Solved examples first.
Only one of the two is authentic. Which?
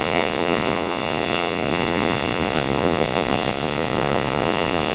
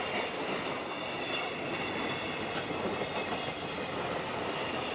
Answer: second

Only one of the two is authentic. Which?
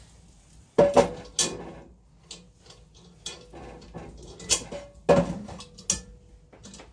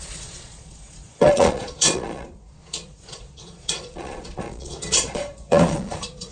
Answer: first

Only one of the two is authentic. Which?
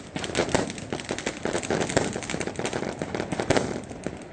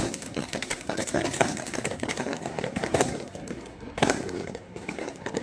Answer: first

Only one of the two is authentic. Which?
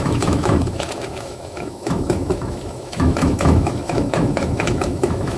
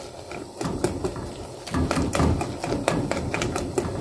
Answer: second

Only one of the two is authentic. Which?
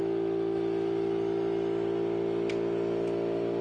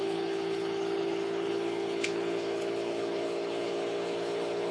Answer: first